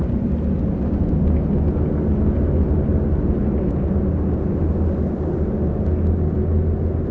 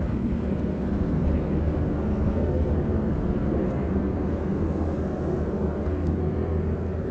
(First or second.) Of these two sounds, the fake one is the second